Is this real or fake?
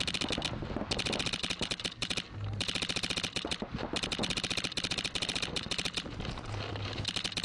real